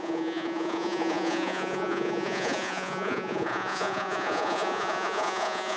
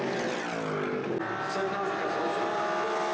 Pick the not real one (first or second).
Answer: first